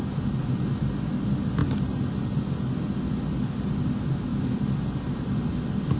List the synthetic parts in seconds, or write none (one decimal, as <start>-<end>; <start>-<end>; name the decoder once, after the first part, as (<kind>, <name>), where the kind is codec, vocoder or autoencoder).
none